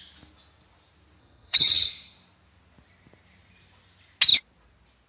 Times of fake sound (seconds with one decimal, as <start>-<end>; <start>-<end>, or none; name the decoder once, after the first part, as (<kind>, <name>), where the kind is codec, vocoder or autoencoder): 1.2-1.9 (vocoder, HiFi-GAN)